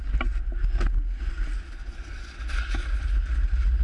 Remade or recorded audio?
recorded